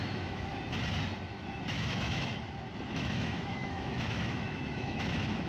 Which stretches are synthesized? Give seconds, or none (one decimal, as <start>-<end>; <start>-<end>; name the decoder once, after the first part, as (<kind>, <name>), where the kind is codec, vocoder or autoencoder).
0.0-0.5 (autoencoder, DAC-VAE); 1.7-2.3; 2.9-5.5

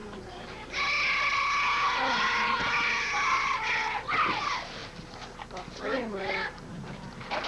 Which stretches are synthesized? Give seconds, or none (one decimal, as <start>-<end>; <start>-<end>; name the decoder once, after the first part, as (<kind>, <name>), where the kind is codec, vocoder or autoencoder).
none

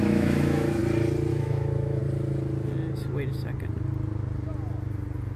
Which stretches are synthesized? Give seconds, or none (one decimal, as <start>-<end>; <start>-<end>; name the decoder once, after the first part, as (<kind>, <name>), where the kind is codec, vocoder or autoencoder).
0.0-0.8 (autoencoder, DAC-VAE); 1.3-2.0